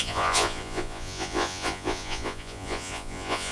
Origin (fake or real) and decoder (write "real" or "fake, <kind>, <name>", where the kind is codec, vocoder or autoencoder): fake, vocoder, Vocos